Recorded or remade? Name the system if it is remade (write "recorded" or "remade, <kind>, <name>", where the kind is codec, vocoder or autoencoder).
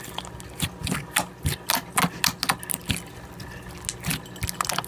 recorded